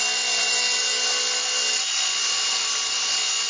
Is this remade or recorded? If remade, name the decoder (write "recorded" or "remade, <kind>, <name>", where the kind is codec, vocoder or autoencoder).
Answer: recorded